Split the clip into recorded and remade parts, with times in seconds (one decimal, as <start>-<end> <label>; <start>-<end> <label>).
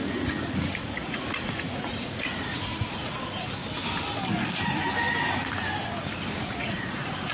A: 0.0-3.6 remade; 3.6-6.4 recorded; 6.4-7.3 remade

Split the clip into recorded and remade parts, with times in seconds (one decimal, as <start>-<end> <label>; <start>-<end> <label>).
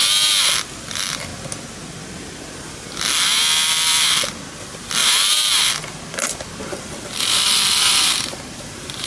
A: 0.0-0.6 recorded; 0.6-1.3 remade; 1.3-3.7 recorded; 3.7-9.1 remade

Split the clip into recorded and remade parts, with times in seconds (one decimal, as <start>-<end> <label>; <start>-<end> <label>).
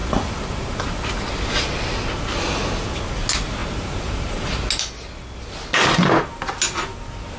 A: 0.0-1.3 remade; 1.3-3.6 recorded; 3.6-4.6 remade; 4.6-7.4 recorded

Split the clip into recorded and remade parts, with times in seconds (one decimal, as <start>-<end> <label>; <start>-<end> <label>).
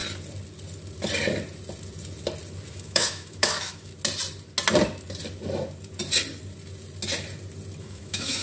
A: 0.0-2.7 recorded; 2.7-3.9 remade; 3.9-7.8 recorded; 7.8-8.4 remade